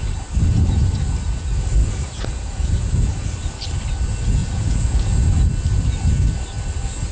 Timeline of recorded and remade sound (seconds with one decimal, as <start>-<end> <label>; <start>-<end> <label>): 0.0-1.8 recorded; 1.8-3.3 remade; 3.3-4.4 recorded; 4.4-5.1 remade; 5.1-7.1 recorded